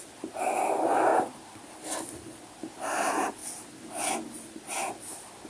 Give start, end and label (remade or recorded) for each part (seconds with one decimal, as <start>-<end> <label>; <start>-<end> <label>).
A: 0.0-5.5 recorded